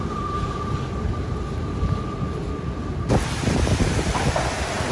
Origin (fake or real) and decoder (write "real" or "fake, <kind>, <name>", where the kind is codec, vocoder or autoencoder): real